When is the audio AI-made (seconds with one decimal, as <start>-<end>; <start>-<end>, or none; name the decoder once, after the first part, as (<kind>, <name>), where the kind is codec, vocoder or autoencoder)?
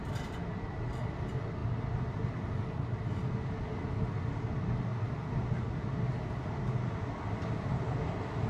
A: none